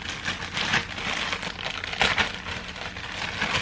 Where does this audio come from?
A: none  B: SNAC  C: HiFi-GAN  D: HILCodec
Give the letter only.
A